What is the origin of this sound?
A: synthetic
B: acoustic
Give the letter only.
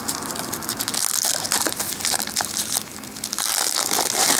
B